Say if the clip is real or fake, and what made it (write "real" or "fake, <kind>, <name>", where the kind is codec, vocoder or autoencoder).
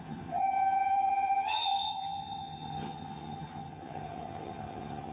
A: fake, vocoder, HiFi-GAN